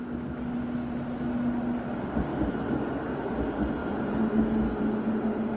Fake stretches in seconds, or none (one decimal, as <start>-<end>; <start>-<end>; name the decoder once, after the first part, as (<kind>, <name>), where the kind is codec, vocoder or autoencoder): 2.3-2.9 (vocoder, BigVGAN v2)